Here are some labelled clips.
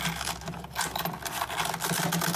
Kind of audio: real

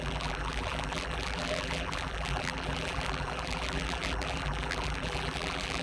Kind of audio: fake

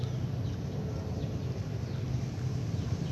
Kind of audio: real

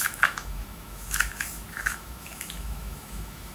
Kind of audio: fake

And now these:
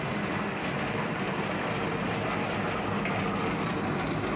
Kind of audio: real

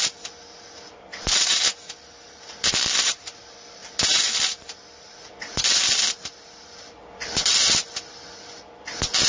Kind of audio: fake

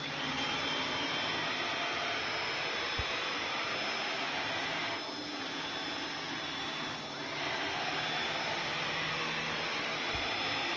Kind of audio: real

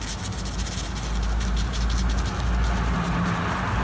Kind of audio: real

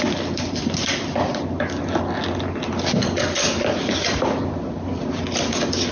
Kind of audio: real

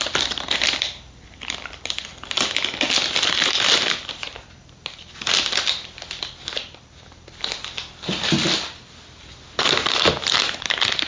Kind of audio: real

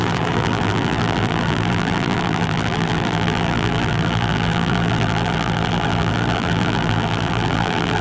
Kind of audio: fake